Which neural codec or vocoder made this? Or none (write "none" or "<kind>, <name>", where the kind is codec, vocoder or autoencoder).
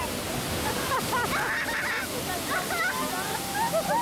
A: none